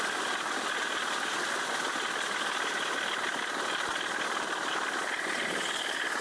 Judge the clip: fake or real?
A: real